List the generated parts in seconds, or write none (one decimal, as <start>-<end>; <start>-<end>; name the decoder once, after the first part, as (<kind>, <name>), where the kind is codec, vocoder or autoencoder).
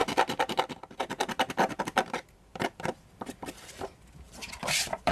1.8-5.1 (vocoder, BigVGAN v2)